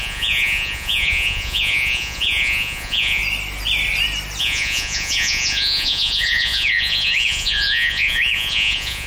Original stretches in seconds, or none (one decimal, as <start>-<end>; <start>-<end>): 3.2-4.4